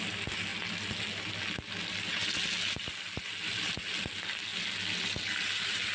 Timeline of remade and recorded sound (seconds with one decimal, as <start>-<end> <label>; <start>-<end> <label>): 0.0-5.9 recorded